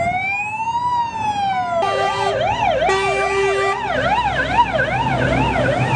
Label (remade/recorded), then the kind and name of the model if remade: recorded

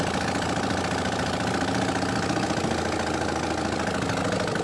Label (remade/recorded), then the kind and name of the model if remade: recorded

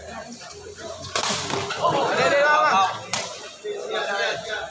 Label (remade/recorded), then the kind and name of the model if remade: recorded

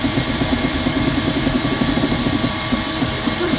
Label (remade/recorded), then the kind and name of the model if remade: remade, vocoder, BigVGAN v2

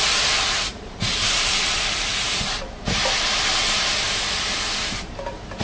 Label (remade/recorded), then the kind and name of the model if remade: remade, vocoder, BigVGAN v2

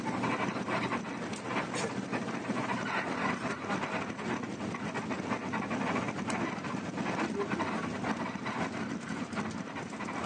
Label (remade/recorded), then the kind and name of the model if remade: recorded